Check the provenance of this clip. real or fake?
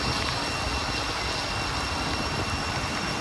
real